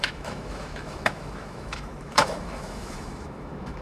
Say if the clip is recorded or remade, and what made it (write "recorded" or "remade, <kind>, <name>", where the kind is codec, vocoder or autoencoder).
remade, autoencoder, DAC-VAE